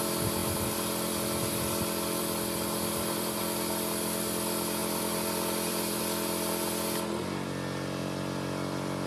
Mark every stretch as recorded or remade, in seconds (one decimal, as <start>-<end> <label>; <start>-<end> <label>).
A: 0.0-0.4 recorded; 0.4-3.4 remade; 3.4-4.8 recorded; 4.8-6.0 remade; 6.0-8.0 recorded; 8.0-9.1 remade